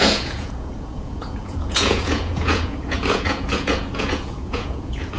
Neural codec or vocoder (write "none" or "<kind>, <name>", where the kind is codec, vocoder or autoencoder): vocoder, Vocos